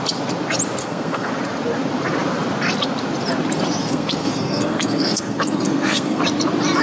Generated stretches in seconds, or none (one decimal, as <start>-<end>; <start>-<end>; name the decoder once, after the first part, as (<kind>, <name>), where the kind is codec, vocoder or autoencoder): 0.8-1.3 (codec, SNAC); 3.8-6.2